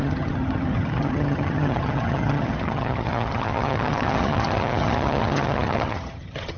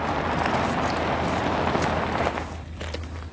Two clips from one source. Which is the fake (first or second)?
first